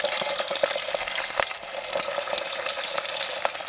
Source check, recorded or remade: recorded